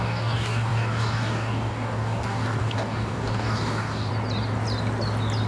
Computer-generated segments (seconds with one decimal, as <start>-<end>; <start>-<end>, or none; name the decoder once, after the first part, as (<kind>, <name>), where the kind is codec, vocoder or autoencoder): 0.0-4.1 (codec, DAC)